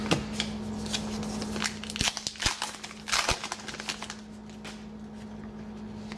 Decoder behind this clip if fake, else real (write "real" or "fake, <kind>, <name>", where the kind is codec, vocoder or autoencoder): real